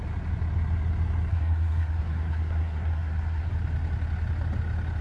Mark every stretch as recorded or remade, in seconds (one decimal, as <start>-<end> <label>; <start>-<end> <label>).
0.0-1.3 recorded; 1.3-3.5 remade; 3.5-5.0 recorded